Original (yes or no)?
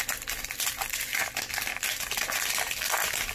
yes